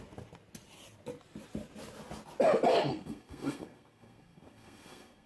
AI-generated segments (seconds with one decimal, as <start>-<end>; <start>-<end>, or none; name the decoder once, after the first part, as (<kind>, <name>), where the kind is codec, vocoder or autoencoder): 2.7-5.3 (codec, SNAC)